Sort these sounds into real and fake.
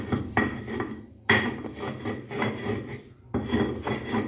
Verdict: real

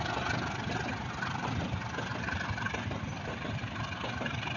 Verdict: real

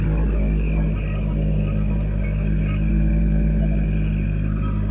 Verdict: real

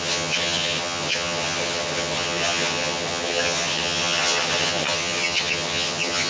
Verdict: fake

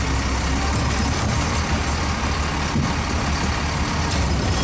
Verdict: real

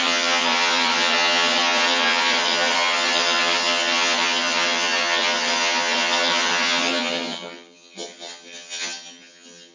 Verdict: fake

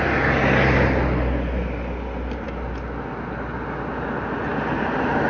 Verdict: real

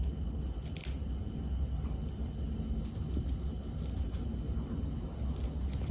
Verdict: real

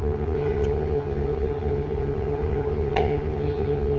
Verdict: fake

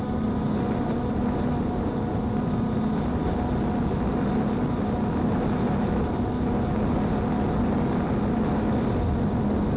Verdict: real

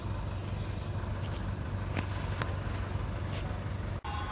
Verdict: real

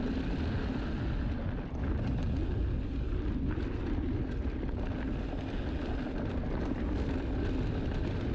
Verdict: real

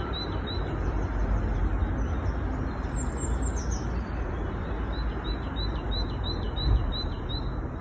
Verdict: real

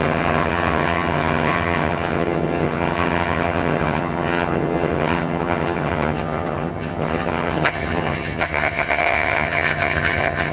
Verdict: fake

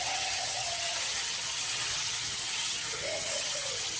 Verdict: fake